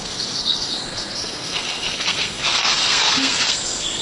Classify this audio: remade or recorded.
remade